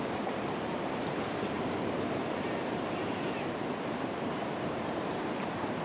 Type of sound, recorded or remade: remade